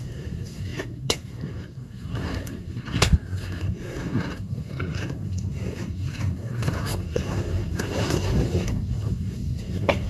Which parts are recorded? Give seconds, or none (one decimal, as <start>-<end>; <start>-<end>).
none